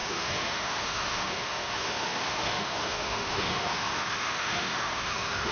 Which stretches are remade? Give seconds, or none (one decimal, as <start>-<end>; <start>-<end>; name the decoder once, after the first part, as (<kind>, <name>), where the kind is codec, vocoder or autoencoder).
0.0-5.5 (autoencoder, DAC-VAE)